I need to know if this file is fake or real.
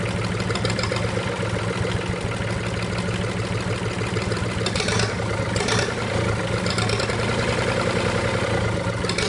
real